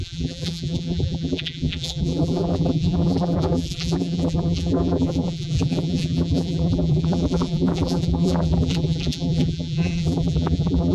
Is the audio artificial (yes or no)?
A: yes